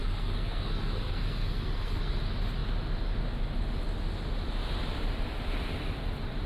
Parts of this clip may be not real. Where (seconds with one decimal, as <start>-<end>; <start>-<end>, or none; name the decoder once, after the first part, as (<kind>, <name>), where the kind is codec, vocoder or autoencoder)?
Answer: 0.0-2.2 (codec, SNAC)